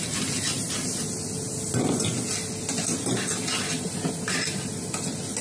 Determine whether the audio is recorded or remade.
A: recorded